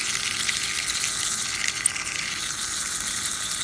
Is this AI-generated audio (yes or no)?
no